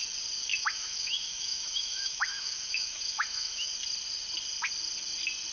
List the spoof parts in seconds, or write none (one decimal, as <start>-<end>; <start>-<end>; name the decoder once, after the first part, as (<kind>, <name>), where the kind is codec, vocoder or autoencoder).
0.5-3.7 (autoencoder, DAC-VAE)